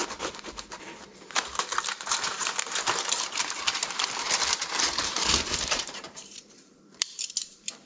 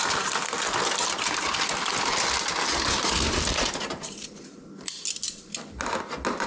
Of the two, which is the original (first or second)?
second